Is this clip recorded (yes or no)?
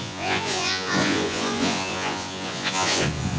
no